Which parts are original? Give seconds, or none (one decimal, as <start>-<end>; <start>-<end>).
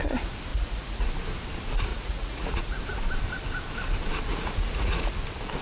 0.0-0.5; 1.1-1.9; 2.8-4.3; 5.1-5.6